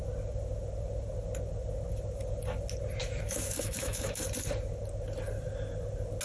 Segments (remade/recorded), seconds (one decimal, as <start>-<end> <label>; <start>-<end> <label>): 0.0-3.0 recorded; 3.0-4.2 remade; 4.2-6.2 recorded